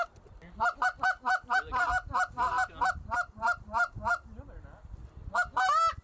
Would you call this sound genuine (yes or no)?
yes